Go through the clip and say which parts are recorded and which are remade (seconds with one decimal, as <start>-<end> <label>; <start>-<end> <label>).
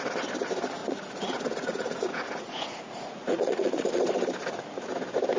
0.0-0.8 recorded; 0.8-4.0 remade; 4.0-5.4 recorded